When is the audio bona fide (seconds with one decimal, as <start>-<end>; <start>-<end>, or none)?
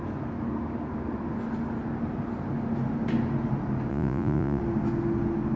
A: 0.0-3.9; 4.6-5.6